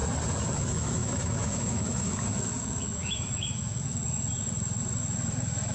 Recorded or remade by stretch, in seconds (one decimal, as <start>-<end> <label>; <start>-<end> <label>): 0.0-0.6 recorded; 0.6-4.0 remade; 4.0-5.7 recorded